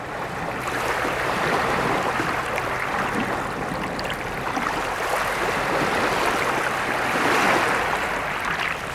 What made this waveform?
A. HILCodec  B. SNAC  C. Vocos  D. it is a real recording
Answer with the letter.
D